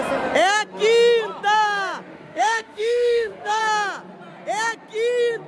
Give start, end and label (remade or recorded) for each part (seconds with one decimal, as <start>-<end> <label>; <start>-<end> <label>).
0.0-2.1 recorded; 2.1-3.6 remade; 3.6-5.5 recorded